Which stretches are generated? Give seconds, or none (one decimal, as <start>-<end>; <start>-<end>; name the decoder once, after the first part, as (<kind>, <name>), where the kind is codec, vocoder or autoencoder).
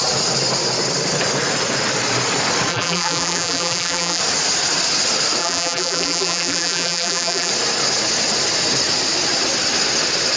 2.7-4.2 (vocoder, BigVGAN v2); 5.4-7.5